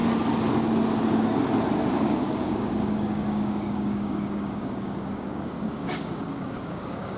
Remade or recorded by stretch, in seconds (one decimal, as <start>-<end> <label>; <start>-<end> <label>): 0.0-1.9 recorded; 1.9-7.2 remade